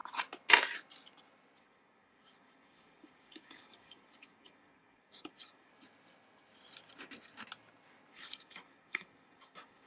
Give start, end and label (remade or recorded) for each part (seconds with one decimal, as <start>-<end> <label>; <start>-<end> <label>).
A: 0.0-1.6 recorded; 1.6-5.7 remade; 5.7-8.1 recorded; 8.1-9.9 remade